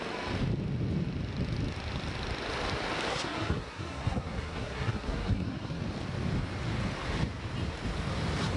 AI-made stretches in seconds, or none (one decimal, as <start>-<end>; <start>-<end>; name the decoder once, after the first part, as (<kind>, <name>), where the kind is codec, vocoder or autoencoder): 3.1-5.8 (codec, SNAC)